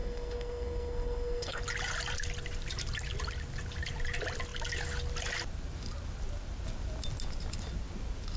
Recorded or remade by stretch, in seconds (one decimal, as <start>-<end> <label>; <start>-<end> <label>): 0.0-1.6 remade; 1.6-8.4 recorded